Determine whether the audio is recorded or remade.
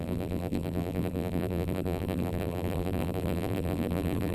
remade